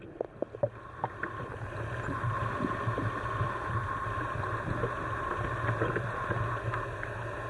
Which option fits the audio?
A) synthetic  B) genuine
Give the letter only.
B